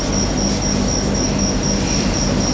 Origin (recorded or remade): recorded